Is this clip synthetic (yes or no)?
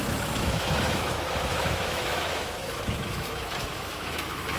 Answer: yes